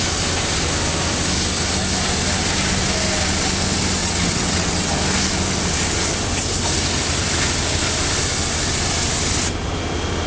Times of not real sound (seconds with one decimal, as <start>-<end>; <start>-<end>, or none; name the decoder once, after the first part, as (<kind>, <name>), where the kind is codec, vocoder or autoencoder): 4.0-4.9 (vocoder, WaveNeXt)